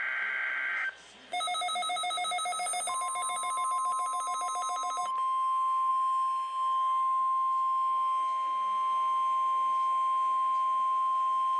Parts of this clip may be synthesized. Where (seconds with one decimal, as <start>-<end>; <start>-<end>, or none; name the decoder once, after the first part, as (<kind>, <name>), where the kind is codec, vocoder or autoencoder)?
none